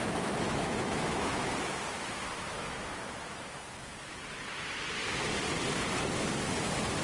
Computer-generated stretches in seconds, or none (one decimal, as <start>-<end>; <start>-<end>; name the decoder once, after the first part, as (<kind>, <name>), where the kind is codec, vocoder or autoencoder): 0.0-4.2 (autoencoder, DAC-VAE)

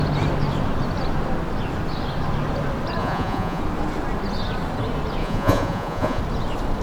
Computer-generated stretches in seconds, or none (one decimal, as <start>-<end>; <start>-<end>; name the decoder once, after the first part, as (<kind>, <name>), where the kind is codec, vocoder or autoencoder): 3.0-3.6 (vocoder, Vocos); 5.2-6.2

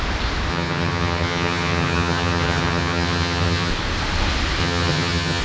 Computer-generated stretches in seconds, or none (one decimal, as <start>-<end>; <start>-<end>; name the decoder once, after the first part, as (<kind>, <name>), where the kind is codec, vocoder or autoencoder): 0.5-3.7 (vocoder, HiFi-GAN); 4.6-5.4

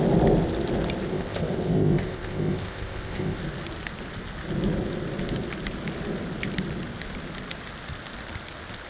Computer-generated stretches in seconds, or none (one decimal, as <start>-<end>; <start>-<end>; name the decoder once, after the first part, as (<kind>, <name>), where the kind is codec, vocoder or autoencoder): 1.1-3.4 (codec, ZipCodec)